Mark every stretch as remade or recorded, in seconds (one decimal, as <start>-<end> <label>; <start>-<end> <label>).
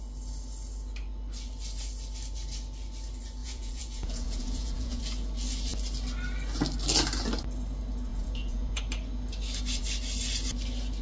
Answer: 0.0-3.4 recorded; 3.4-5.0 remade; 5.0-8.1 recorded; 8.1-8.8 remade; 8.8-11.0 recorded